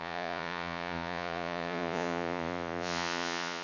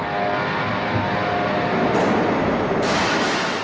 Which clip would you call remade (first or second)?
first